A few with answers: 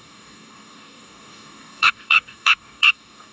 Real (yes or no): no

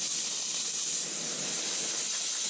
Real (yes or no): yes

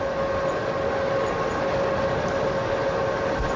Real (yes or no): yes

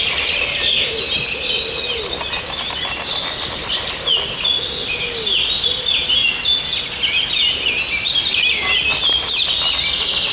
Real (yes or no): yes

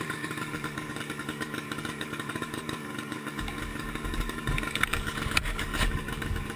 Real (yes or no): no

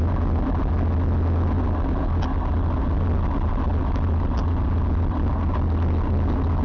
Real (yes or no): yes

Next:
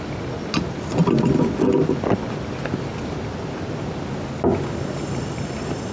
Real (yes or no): yes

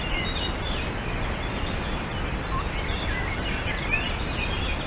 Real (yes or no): yes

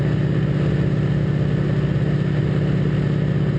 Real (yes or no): yes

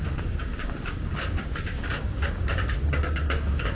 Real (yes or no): no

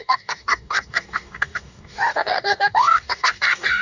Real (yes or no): no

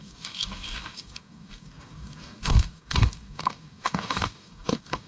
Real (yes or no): no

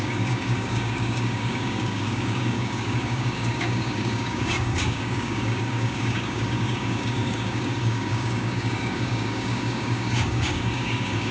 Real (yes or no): no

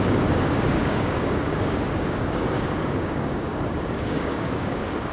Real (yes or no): no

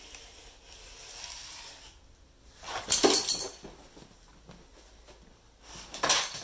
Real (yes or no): yes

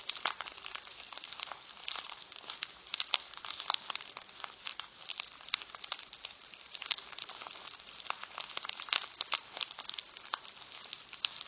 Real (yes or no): yes